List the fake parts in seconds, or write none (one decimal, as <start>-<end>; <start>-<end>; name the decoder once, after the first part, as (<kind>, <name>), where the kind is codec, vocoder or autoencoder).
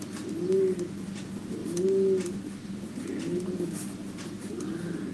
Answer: none